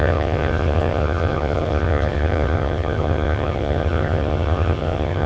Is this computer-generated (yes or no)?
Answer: yes